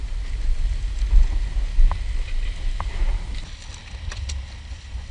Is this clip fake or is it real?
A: real